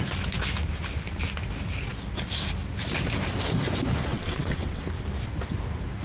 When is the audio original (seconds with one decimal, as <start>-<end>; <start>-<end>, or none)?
0.0-4.1; 4.8-6.0